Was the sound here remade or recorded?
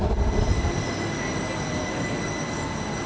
recorded